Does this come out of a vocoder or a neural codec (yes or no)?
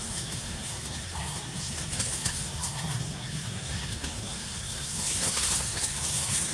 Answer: yes